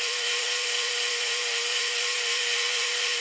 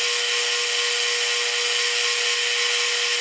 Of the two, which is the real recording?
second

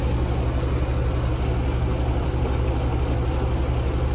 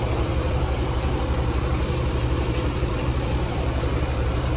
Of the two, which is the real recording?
first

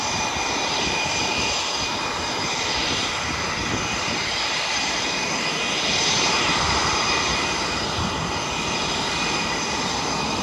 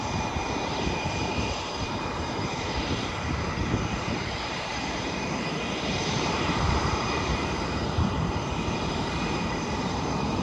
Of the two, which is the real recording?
first